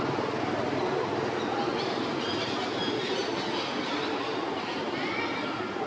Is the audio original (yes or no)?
yes